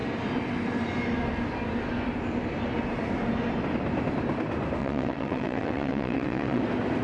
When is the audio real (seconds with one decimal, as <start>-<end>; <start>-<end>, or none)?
0.0-4.8; 6.6-7.0